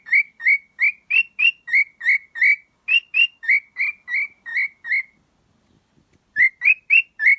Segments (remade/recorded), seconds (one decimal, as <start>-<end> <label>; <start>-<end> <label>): 0.0-7.4 recorded

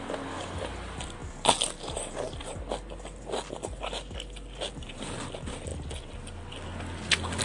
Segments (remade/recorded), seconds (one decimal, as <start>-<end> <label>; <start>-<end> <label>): 0.0-7.4 recorded

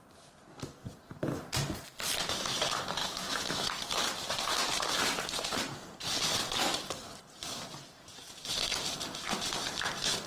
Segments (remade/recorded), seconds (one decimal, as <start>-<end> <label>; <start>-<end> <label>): 0.0-3.0 recorded; 3.0-3.7 remade; 3.7-10.3 recorded

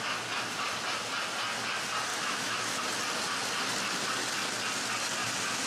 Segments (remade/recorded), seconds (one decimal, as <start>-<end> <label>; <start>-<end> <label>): 0.0-2.1 recorded; 2.1-2.8 remade; 2.8-5.7 recorded

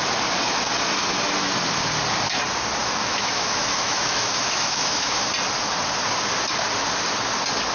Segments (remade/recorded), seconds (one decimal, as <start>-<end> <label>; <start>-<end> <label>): 0.0-2.8 recorded; 2.8-5.2 remade; 5.2-7.7 recorded